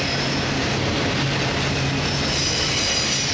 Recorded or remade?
recorded